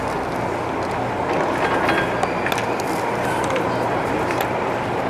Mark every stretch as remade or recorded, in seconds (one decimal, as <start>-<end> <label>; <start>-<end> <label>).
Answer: 0.0-2.6 recorded; 2.6-4.1 remade; 4.1-5.1 recorded